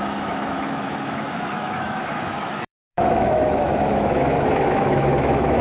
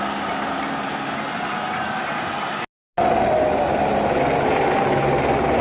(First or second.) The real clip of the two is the second